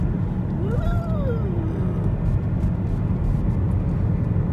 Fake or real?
real